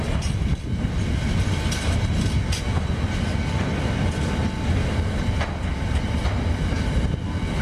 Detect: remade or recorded recorded